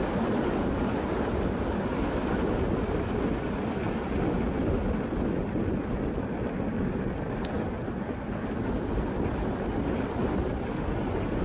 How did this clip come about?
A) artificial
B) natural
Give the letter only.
B